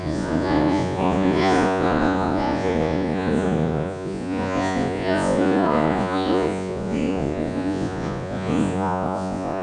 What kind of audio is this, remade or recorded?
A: remade